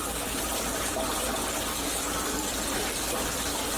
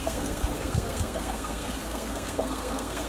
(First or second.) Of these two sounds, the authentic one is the first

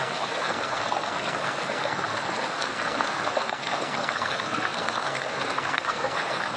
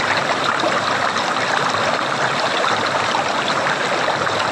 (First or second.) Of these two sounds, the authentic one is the second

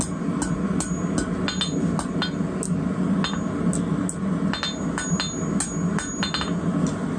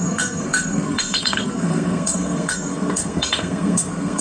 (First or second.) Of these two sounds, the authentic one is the first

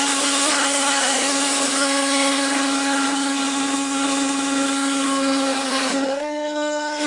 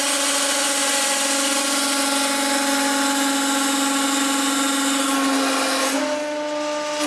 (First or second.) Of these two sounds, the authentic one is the second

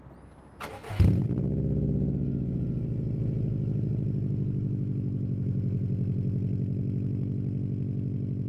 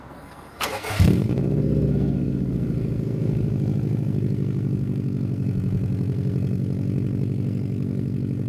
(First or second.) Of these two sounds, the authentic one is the first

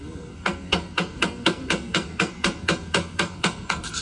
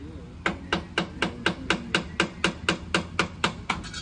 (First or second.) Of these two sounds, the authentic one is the second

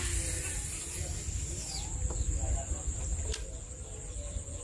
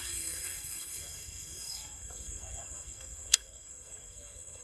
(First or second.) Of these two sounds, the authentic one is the first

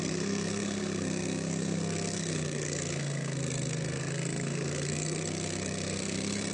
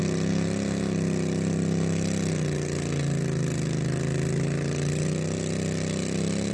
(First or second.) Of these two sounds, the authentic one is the second